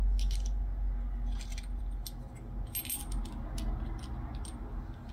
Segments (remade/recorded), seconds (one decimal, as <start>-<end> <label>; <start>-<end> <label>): 0.0-5.1 recorded